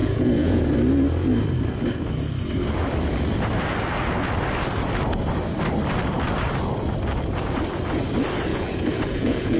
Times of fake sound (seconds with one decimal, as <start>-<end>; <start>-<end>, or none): 0.0-0.6; 8.5-9.6